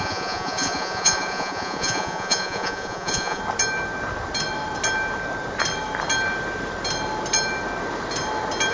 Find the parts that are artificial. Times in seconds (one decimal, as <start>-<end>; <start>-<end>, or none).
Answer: 0.0-3.4